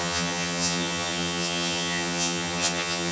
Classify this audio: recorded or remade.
remade